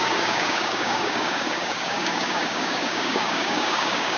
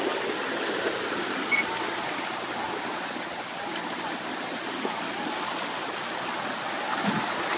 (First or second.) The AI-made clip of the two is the first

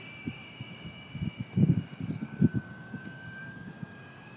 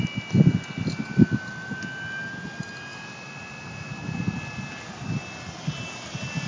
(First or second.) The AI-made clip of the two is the first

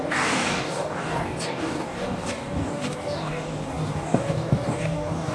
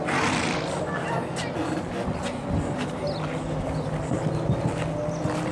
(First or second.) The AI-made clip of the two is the first